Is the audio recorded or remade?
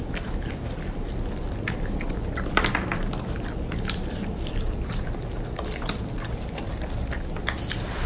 remade